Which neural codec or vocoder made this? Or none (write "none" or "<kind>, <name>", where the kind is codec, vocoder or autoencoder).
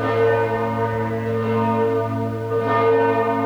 none